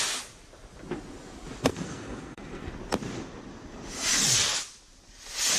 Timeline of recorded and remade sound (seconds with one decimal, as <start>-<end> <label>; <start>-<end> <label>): 0.0-1.6 recorded; 1.6-2.7 remade; 2.7-5.6 recorded